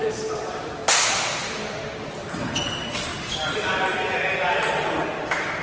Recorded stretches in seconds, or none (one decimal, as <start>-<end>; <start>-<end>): 0.8-1.9; 3.1-3.6